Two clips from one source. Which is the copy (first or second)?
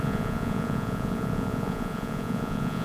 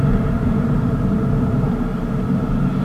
first